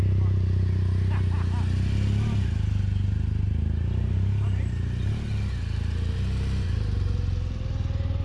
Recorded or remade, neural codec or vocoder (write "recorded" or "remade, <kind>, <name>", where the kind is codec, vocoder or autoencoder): recorded